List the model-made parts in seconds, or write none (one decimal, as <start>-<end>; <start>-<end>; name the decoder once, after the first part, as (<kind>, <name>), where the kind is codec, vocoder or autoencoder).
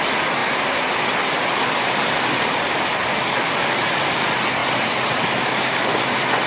0.0-4.6 (vocoder, BigVGAN v2); 5.5-6.5